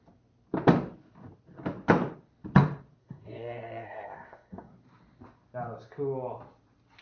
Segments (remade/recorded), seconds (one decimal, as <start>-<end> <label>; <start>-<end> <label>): 0.0-3.0 recorded; 3.0-4.7 remade; 4.7-7.0 recorded